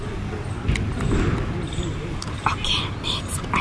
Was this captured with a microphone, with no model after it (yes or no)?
yes